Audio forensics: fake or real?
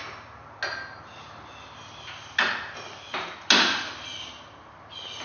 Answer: real